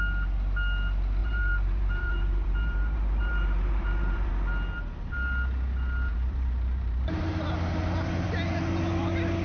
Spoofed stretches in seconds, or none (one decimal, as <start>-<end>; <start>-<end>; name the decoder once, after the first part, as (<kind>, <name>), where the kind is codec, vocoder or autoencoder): 1.2-4.3 (vocoder, BigVGAN v2); 6.1-7.5